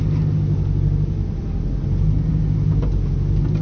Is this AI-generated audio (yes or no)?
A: no